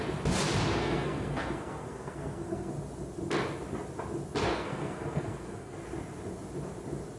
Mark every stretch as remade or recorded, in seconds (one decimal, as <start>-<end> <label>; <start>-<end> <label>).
0.0-0.8 recorded; 0.8-2.7 remade; 2.7-4.5 recorded; 4.5-5.8 remade; 5.8-7.2 recorded